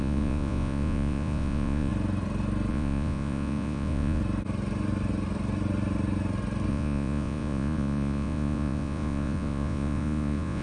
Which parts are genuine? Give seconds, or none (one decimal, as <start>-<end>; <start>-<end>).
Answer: 1.9-2.7; 4.2-6.7